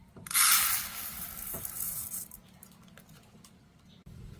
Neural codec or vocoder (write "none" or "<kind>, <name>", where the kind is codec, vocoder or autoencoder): none